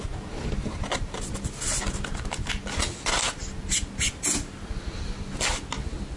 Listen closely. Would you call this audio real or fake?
real